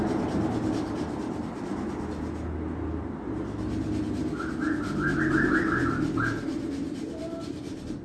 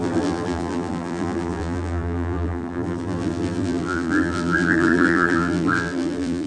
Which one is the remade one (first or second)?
second